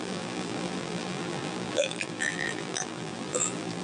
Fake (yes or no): yes